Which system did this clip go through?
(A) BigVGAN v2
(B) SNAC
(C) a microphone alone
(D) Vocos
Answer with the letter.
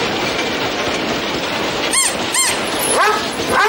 C